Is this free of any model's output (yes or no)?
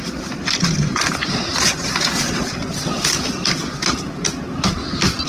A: yes